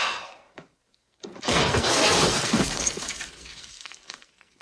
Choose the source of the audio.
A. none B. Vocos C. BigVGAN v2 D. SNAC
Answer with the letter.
D